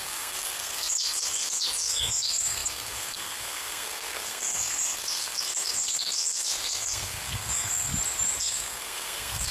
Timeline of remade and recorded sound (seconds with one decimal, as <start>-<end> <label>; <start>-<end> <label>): 0.0-7.9 remade; 7.9-8.4 recorded; 8.4-9.5 remade